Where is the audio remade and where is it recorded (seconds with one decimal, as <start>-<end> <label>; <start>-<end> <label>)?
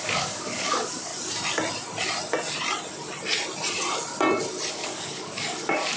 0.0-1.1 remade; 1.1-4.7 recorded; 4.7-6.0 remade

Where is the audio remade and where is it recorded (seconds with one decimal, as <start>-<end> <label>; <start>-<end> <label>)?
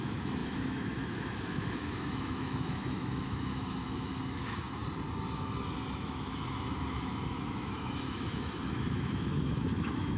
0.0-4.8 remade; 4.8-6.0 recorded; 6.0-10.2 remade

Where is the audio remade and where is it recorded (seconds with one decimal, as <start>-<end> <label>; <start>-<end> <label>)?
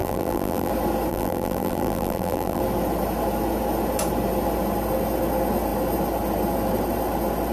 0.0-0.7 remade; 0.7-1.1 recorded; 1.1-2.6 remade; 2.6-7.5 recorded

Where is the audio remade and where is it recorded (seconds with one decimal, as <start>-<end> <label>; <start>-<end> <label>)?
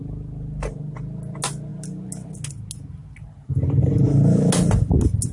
0.0-5.3 recorded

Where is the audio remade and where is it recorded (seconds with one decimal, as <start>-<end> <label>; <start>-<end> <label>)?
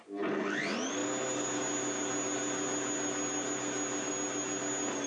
0.0-5.1 recorded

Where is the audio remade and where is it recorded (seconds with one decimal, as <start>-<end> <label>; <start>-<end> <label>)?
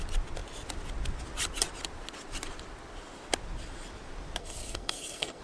0.0-4.4 recorded; 4.4-5.4 remade